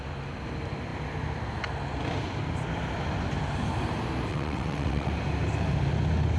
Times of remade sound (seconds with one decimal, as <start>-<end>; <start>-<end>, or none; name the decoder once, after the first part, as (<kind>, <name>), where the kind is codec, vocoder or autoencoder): 4.3-5.1 (vocoder, WaveNeXt)